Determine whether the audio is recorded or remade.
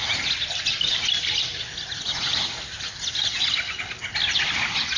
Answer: recorded